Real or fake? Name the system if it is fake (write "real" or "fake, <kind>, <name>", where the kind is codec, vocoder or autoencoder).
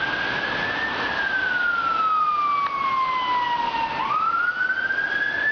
real